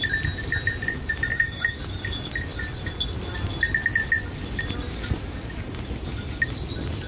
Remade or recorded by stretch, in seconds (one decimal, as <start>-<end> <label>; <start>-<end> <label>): 0.0-1.3 recorded; 1.3-1.8 remade; 1.8-7.1 recorded